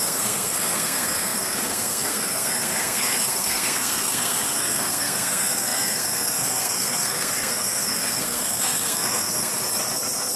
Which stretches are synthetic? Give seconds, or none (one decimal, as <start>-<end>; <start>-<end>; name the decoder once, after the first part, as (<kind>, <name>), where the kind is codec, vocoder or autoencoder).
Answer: 0.0-9.5 (codec, SNAC)